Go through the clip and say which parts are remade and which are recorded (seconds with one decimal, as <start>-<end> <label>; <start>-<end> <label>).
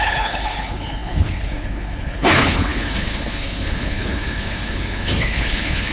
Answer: 0.0-5.9 remade